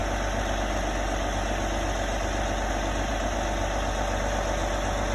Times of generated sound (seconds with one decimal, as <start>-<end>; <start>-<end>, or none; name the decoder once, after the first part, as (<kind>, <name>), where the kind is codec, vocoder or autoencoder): none